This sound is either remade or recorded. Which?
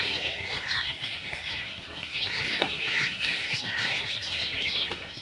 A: remade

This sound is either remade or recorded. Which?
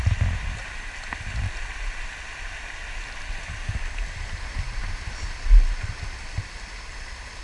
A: recorded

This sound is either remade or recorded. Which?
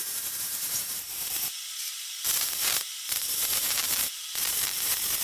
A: remade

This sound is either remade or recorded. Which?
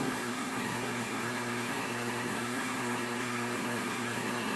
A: remade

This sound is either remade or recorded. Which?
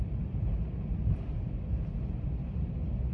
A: recorded